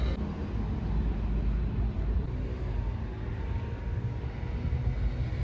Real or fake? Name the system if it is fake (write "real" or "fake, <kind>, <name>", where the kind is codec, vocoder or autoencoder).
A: real